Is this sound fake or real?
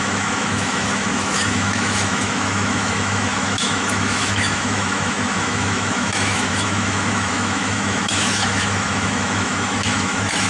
fake